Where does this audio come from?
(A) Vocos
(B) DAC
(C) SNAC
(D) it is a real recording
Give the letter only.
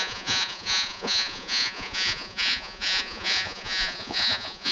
A